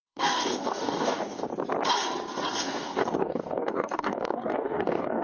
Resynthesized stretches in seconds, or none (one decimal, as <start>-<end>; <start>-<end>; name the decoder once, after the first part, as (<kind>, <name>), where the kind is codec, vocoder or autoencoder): 0.0-1.5 (codec, DAC); 2.6-5.2